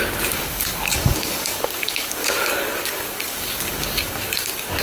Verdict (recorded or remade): remade